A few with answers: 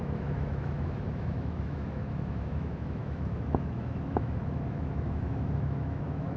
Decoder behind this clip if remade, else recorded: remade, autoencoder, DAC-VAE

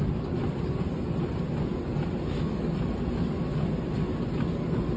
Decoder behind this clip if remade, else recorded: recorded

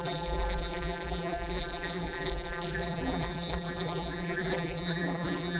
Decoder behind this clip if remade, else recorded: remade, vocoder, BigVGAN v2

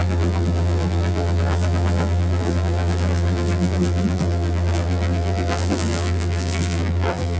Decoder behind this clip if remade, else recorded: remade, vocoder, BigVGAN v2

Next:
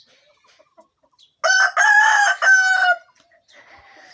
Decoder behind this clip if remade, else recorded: recorded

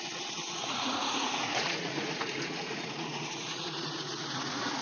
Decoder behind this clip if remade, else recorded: remade, vocoder, Vocos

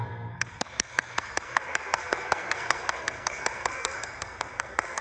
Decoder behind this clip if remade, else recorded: remade, codec, SNAC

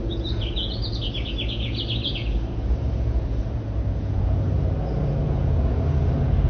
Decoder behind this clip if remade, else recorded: remade, vocoder, Vocos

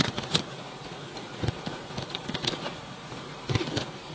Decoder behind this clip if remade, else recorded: remade, vocoder, Vocos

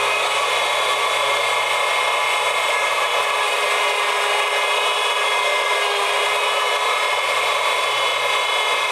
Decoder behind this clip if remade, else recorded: recorded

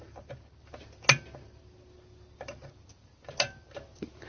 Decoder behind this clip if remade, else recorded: recorded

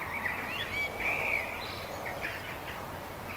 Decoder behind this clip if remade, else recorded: recorded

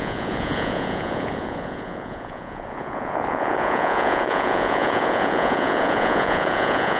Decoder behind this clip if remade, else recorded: remade, vocoder, Vocos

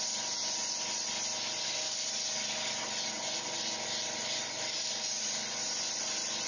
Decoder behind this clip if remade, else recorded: recorded